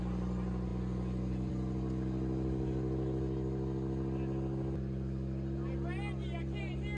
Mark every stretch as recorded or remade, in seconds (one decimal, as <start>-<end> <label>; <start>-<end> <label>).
0.0-7.0 recorded

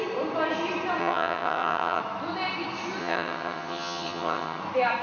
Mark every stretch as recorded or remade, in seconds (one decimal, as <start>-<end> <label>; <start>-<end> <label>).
0.0-1.0 recorded; 1.0-2.0 remade; 2.0-3.0 recorded; 3.0-4.6 remade; 4.6-5.0 recorded

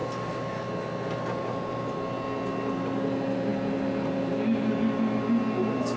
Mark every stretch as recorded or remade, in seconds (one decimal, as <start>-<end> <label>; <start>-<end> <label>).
0.0-6.0 recorded

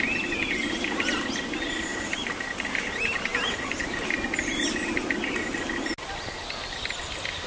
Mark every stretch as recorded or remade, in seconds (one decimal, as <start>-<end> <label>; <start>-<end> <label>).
0.0-1.9 recorded; 1.9-2.9 remade; 2.9-3.3 recorded; 3.3-4.1 remade; 4.1-7.5 recorded

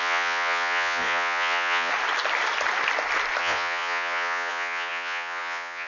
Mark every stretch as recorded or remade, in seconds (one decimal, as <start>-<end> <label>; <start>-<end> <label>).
0.0-1.9 remade; 1.9-3.4 recorded; 3.4-5.9 remade

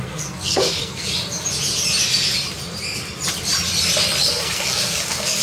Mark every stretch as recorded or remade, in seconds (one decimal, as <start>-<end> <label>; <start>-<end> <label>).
0.0-1.1 remade; 1.1-4.3 recorded; 4.3-5.4 remade